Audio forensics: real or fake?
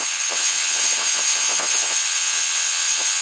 fake